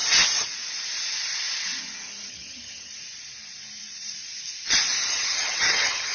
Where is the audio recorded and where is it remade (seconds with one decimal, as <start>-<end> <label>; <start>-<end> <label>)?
0.0-2.3 recorded; 2.3-2.9 remade; 2.9-5.1 recorded; 5.1-6.1 remade